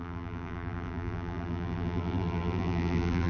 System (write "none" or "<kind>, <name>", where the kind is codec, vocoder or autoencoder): vocoder, BigVGAN v2